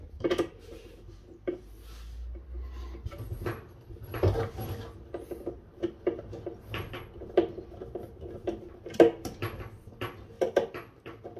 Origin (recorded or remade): recorded